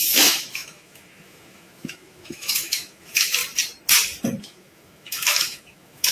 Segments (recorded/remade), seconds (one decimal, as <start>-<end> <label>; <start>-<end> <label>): 0.0-3.4 remade; 3.4-4.4 recorded; 4.4-6.1 remade